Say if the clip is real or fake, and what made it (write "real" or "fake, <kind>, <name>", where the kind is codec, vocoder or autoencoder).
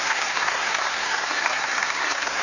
fake, codec, SNAC